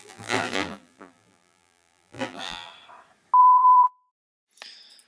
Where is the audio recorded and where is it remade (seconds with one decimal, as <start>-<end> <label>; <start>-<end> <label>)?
0.0-2.7 remade; 2.7-3.4 recorded; 3.4-4.1 remade; 4.1-5.1 recorded